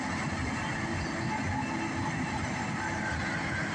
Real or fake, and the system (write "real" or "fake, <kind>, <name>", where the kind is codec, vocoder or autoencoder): real